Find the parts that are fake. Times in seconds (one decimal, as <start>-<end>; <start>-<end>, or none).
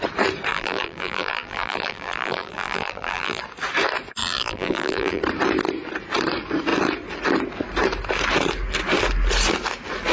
0.5-3.4; 4.2-5.2